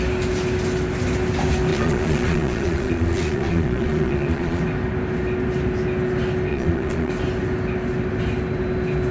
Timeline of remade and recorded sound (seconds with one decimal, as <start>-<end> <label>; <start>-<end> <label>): 0.0-1.7 recorded; 1.7-4.6 remade; 4.6-6.5 recorded; 6.5-7.1 remade; 7.1-9.1 recorded